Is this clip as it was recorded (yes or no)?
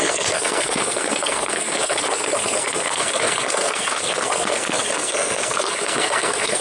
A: no